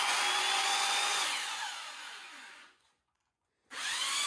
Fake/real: fake